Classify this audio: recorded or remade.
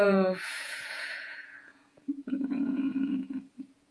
remade